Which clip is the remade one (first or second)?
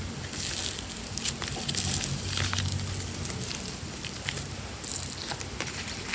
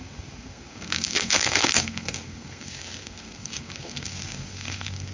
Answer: second